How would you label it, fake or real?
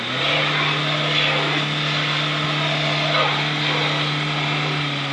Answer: real